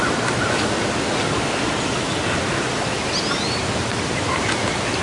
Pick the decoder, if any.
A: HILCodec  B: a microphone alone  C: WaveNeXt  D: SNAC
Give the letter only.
B